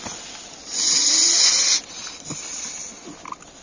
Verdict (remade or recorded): recorded